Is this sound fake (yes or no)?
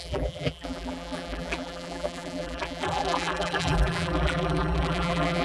yes